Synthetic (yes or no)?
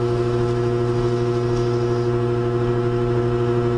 no